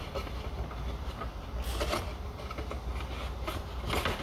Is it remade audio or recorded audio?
recorded